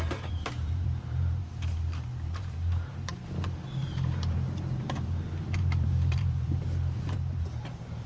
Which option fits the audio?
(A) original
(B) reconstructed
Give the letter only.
B